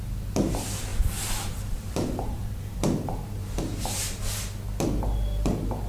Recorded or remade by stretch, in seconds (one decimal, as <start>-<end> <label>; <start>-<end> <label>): 0.0-0.9 recorded; 0.9-4.4 remade; 4.4-5.9 recorded